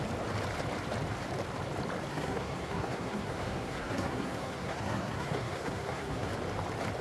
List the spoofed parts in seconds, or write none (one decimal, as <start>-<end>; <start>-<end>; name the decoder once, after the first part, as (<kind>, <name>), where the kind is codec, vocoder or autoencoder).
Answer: 2.1-6.3 (codec, SNAC)